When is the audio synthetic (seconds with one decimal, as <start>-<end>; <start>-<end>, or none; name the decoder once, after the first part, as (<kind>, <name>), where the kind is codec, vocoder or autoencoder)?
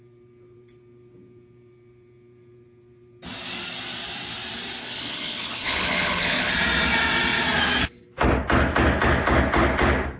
4.8-6.5 (codec, HILCodec)